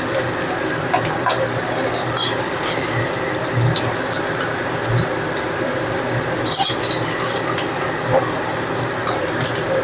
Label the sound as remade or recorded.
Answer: recorded